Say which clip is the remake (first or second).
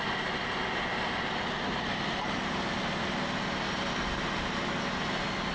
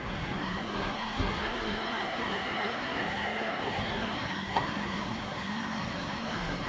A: second